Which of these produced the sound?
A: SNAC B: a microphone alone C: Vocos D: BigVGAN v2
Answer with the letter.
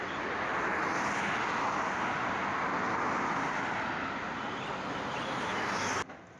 B